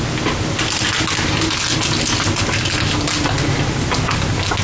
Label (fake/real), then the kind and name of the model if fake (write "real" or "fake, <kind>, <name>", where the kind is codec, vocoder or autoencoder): real